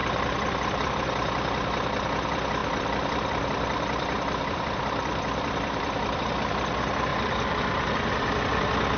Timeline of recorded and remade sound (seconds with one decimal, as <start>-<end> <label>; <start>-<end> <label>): 0.0-0.9 remade; 0.9-2.6 recorded; 2.6-6.2 remade; 6.2-7.1 recorded; 7.1-8.4 remade; 8.4-9.0 recorded